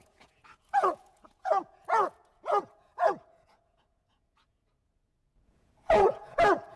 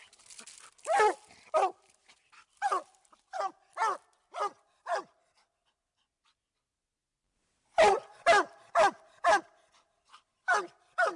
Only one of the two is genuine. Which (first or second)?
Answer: second